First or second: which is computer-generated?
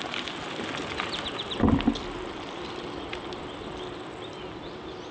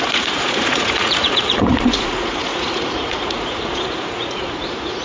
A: second